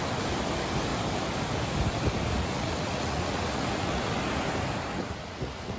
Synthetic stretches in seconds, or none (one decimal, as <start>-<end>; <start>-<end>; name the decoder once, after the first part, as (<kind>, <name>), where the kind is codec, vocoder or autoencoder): 2.3-4.0 (vocoder, Vocos); 4.9-5.8